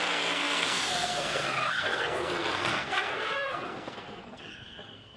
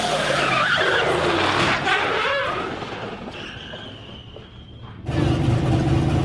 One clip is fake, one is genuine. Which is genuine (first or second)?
second